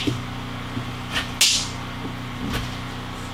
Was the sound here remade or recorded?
recorded